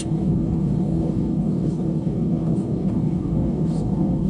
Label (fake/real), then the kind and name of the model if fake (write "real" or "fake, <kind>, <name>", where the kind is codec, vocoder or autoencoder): fake, codec, DAC